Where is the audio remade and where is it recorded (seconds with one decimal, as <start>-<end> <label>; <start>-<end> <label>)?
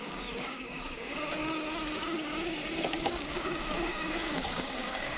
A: 0.0-1.4 remade; 1.4-2.9 recorded; 2.9-5.2 remade